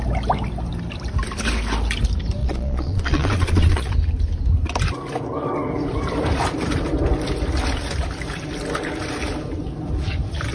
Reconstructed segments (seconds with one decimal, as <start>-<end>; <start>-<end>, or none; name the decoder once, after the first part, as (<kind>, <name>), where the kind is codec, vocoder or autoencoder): 2.4-3.9 (vocoder, Vocos)